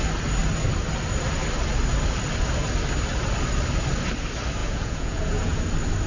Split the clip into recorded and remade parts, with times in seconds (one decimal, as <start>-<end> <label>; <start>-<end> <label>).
0.0-4.6 recorded; 4.6-5.6 remade; 5.6-6.1 recorded